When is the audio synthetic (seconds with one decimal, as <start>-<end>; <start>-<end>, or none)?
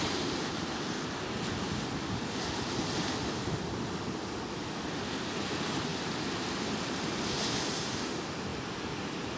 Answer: 8.5-9.4